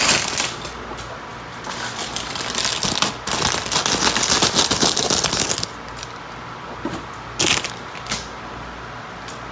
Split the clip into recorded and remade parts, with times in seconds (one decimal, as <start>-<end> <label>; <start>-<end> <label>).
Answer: 0.0-9.5 recorded